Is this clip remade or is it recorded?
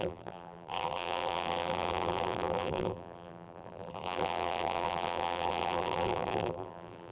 remade